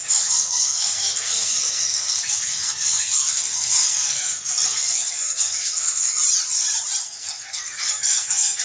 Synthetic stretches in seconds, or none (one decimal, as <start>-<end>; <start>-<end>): 0.0-6.2; 7.0-8.6